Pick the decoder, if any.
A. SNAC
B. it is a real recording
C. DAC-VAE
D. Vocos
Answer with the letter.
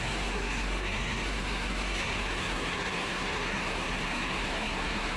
A